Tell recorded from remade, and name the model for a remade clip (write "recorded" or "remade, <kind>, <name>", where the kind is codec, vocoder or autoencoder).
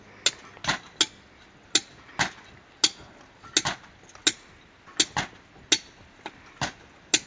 recorded